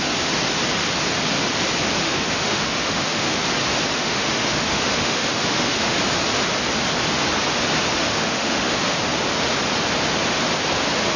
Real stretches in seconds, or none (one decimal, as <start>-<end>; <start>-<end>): 0.0-2.0; 3.4-4.0; 6.0-7.9; 9.0-11.2